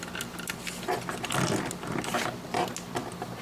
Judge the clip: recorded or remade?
recorded